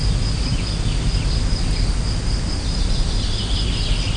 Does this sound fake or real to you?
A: real